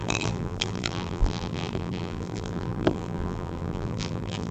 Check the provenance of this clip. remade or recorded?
remade